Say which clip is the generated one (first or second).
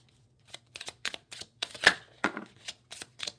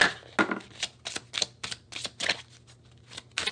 first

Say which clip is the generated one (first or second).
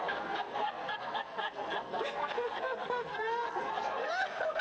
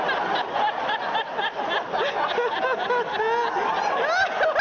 first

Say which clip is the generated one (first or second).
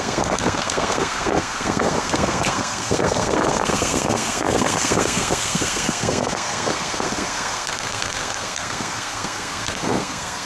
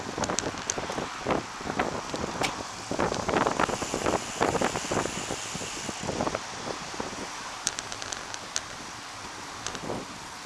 first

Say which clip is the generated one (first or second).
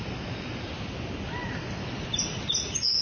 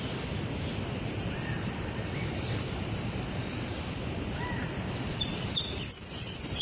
second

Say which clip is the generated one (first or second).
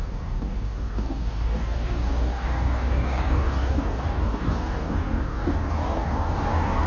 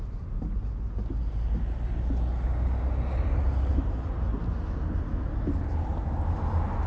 first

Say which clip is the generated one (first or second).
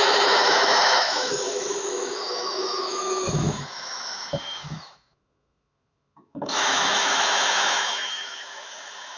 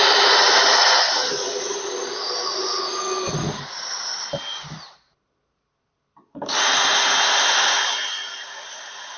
first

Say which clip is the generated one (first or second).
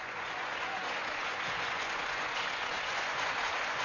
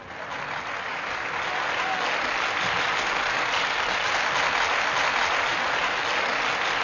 first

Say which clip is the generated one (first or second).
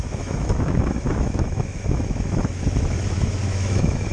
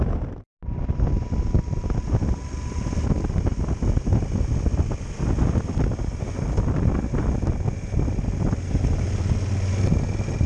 first